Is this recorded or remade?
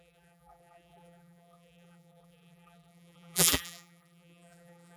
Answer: remade